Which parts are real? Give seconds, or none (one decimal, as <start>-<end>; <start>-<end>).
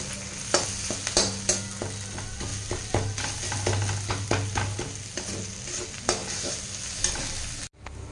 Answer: 0.0-6.2; 7.6-8.1